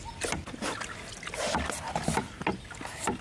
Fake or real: real